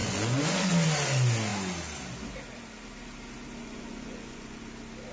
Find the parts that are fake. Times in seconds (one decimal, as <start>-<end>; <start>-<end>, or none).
0.0-0.7; 3.6-4.6